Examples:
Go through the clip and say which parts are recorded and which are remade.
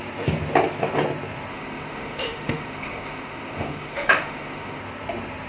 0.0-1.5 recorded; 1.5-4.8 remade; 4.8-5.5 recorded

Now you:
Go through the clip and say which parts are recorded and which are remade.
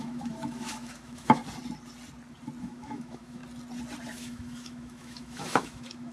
0.0-1.4 remade; 1.4-2.6 recorded; 2.6-3.4 remade; 3.4-4.1 recorded; 4.1-6.1 remade